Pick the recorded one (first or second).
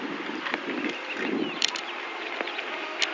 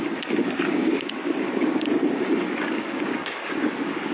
first